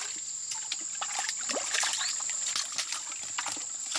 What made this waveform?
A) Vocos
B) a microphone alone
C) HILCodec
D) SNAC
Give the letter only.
B